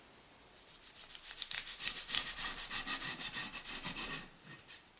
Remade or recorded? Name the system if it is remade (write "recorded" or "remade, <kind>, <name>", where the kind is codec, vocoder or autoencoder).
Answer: remade, vocoder, BigVGAN v2